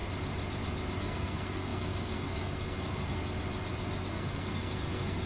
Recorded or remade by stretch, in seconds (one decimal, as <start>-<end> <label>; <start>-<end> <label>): 0.0-1.0 recorded; 1.0-3.2 remade; 3.2-4.1 recorded; 4.1-5.3 remade

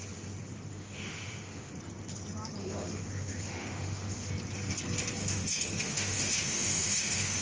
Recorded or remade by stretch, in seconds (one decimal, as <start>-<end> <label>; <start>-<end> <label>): 0.0-0.7 recorded; 0.7-1.7 remade; 1.7-2.6 recorded; 2.6-4.3 remade; 4.3-5.2 recorded; 5.2-7.4 remade

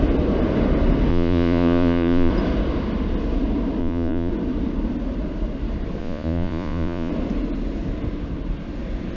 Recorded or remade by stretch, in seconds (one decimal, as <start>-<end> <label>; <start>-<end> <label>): 0.0-1.1 recorded; 1.1-2.3 remade; 2.3-3.8 recorded; 3.8-4.3 remade; 4.3-6.0 recorded; 6.0-7.1 remade; 7.1-9.2 recorded

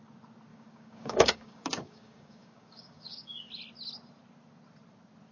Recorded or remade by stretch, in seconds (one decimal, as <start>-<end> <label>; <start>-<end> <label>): 0.0-0.5 recorded; 0.5-3.5 remade; 3.5-5.3 recorded